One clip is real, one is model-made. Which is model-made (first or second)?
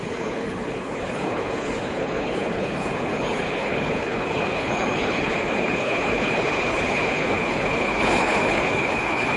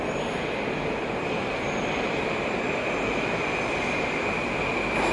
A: first